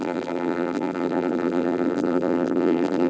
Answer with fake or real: fake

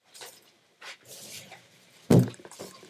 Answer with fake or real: fake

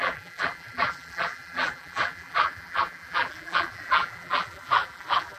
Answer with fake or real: fake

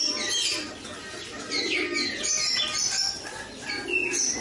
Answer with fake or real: real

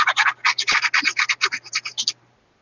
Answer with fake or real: real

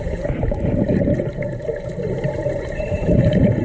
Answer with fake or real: fake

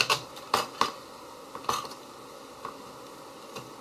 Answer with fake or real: real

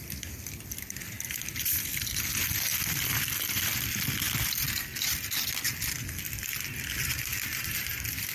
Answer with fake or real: fake